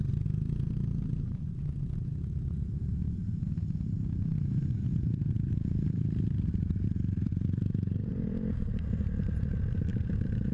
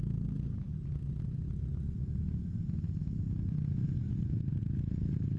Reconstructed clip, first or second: first